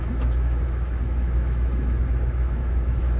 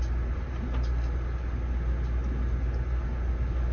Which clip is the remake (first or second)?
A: first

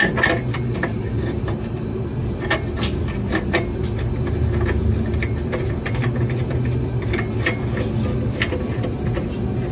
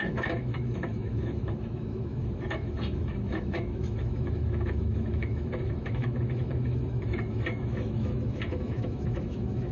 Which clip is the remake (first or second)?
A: second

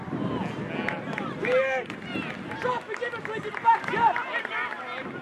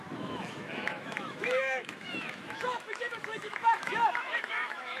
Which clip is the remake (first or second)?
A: second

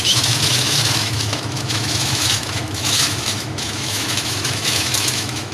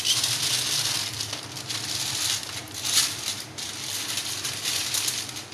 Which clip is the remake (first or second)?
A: first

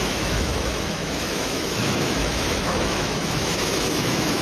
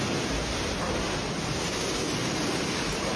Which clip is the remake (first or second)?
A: first